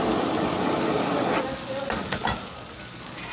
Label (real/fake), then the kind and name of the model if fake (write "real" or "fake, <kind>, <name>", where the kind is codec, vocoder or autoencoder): real